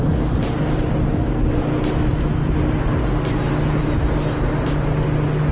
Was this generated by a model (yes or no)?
no